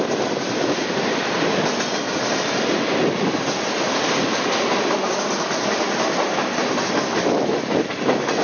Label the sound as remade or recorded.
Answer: recorded